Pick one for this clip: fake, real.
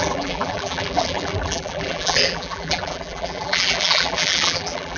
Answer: fake